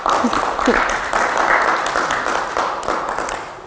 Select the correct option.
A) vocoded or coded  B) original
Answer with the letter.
B